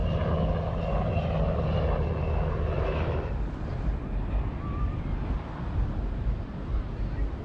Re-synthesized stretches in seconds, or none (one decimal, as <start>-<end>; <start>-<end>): none